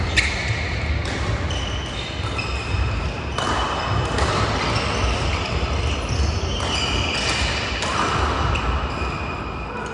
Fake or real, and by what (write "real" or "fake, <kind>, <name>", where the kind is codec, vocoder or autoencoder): real